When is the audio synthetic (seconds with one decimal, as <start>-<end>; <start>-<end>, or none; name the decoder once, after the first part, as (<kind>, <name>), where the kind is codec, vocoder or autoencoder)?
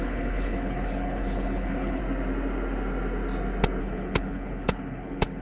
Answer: 0.0-2.0 (codec, HILCodec); 3.8-5.4